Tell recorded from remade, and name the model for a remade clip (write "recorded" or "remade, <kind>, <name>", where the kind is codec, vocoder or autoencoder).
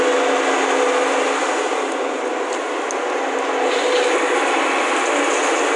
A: recorded